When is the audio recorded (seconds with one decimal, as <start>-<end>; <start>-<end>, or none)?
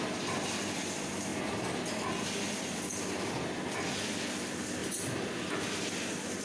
0.0-6.4